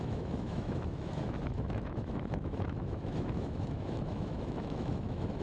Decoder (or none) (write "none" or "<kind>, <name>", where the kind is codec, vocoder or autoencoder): autoencoder, DAC-VAE